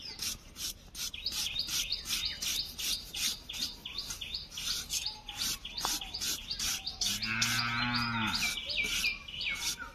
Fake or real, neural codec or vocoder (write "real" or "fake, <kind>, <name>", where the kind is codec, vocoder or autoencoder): real